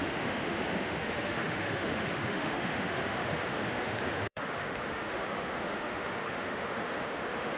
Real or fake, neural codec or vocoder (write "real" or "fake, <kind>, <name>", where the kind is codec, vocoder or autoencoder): fake, autoencoder, DAC-VAE